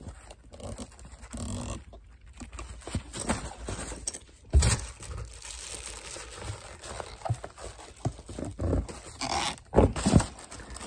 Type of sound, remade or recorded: recorded